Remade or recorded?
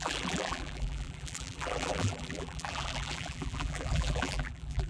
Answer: remade